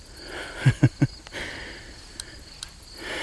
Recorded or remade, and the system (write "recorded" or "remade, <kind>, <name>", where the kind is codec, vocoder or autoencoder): recorded